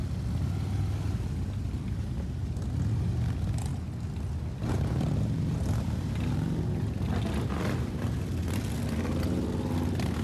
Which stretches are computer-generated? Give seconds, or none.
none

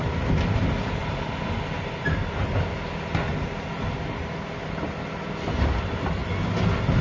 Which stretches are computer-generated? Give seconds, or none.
none

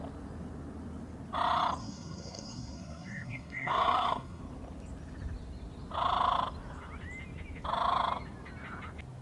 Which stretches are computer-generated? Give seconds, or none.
1.8-4.4

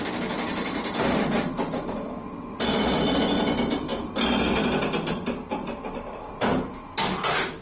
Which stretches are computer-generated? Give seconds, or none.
3.9-4.5

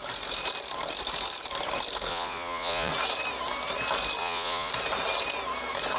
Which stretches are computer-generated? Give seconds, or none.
2.1-2.9; 4.2-4.7